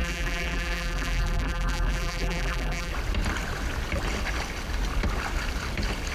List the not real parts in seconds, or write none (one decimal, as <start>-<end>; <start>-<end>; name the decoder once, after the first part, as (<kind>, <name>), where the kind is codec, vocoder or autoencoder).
0.0-2.9 (vocoder, BigVGAN v2)